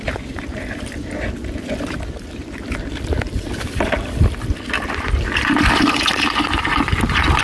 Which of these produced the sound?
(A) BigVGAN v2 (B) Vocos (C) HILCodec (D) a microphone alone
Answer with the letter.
D